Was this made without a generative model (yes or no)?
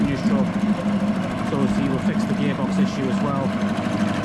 yes